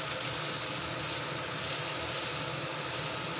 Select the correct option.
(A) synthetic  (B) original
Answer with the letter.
B